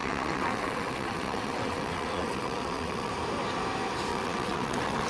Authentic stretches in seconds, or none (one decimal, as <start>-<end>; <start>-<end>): 3.1-4.1